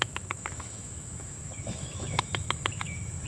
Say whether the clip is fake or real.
fake